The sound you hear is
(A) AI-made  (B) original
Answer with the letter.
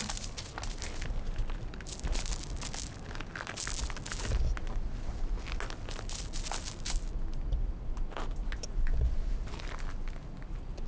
B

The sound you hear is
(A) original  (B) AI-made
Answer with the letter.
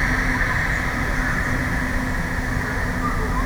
A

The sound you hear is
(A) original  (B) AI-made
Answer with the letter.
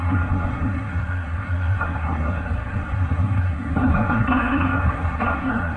B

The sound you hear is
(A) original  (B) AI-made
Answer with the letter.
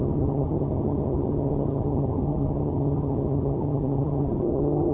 B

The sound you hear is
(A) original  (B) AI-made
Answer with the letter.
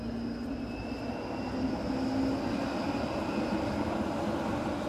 A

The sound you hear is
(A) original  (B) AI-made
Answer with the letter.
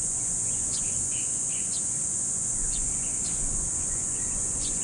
B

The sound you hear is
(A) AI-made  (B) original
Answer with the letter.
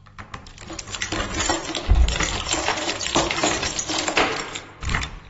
A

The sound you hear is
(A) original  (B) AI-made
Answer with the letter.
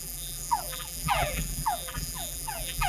B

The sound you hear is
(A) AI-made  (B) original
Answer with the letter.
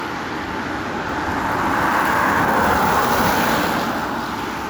B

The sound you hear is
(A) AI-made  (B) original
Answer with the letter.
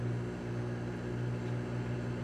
B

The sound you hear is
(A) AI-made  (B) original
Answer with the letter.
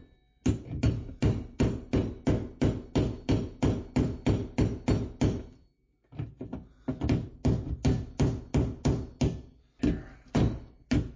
B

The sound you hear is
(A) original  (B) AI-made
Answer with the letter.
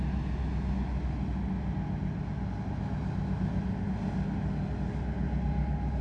A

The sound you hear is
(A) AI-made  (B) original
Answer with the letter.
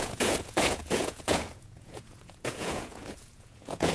A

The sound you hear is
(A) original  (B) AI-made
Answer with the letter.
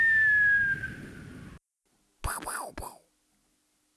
A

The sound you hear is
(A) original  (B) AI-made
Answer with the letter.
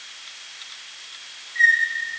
A